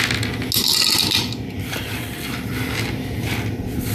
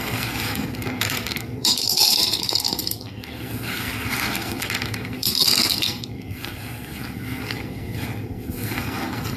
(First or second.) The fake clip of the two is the second